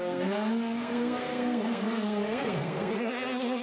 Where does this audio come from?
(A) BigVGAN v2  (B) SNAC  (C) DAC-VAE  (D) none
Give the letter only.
B